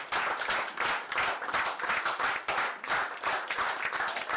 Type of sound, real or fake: real